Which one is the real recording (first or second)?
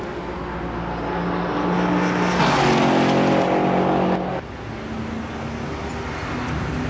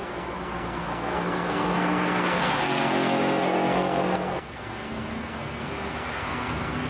first